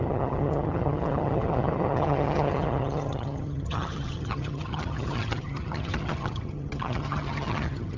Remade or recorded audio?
remade